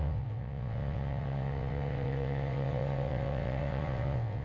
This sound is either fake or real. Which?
fake